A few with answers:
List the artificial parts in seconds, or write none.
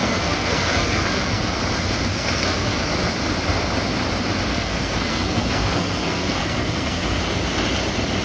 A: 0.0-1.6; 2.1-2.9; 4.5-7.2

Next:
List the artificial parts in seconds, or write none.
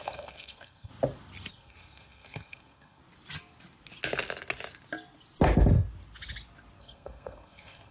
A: 0.0-0.9; 1.5-3.0; 6.8-7.9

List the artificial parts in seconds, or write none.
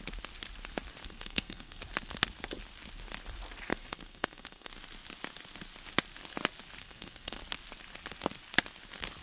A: 1.0-1.8; 3.7-4.7; 6.8-7.4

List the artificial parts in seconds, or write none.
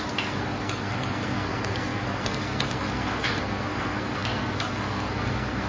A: 0.0-5.7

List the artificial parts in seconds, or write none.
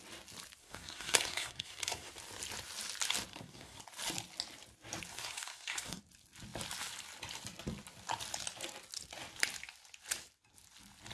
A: 0.6-2.1; 3.3-3.8; 5.1-6.0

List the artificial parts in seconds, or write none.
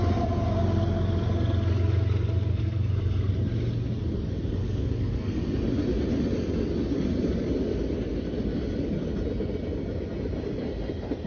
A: 2.5-3.3; 4.6-5.4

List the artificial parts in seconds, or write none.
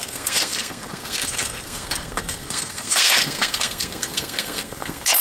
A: 0.0-5.2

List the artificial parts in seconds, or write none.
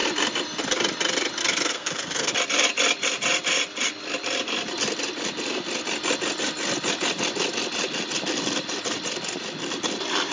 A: 1.4-2.3